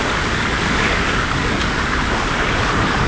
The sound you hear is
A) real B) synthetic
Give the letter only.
B